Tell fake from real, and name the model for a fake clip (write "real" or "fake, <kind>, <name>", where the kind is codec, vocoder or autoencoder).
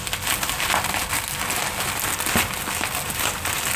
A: real